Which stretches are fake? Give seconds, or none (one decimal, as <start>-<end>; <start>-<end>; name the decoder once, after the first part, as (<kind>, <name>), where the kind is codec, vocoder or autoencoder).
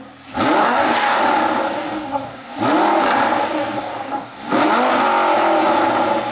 0.6-1.2 (codec, DAC); 1.6-2.6; 3.4-4.7